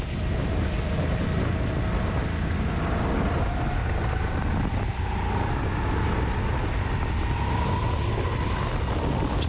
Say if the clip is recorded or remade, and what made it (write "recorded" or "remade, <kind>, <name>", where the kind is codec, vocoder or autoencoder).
recorded